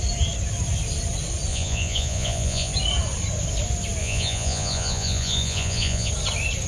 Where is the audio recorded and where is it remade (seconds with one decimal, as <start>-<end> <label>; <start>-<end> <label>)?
0.0-1.5 recorded; 1.5-2.7 remade; 2.7-4.0 recorded; 4.0-6.1 remade; 6.1-6.7 recorded